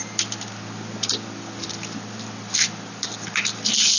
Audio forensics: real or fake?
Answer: real